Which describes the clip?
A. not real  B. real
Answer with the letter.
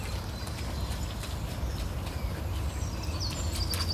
B